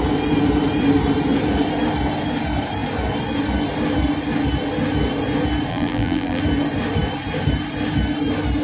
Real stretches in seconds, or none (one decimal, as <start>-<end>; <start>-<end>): 0.0-5.7; 6.4-8.6